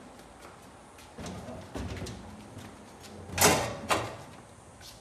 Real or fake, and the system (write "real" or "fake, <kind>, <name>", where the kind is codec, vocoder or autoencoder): real